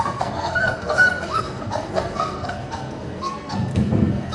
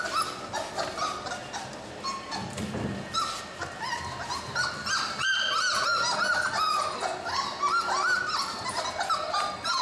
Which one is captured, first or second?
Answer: second